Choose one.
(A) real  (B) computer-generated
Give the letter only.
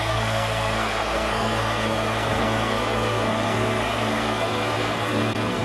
B